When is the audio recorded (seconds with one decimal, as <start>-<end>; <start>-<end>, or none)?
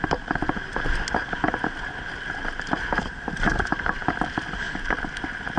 0.0-5.6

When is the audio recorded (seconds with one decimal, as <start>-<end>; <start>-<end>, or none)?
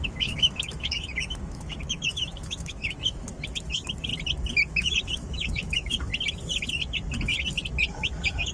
4.1-4.7; 6.1-7.9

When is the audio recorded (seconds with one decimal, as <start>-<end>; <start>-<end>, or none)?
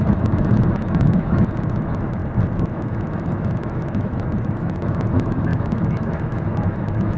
2.2-2.7